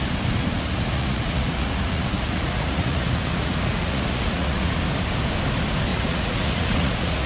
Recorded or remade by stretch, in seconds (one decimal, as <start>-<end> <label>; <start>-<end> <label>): 0.0-0.4 recorded; 0.4-4.8 remade; 4.8-5.9 recorded; 5.9-7.3 remade